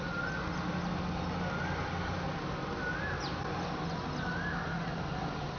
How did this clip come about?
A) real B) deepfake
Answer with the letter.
A